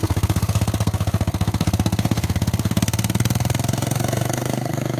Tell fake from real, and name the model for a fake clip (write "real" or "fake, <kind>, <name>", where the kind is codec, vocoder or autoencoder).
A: fake, codec, SNAC